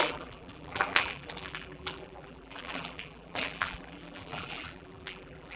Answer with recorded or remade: remade